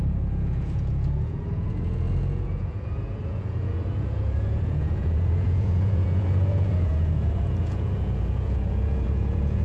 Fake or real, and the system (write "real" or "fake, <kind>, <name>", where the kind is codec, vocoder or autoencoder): fake, vocoder, Vocos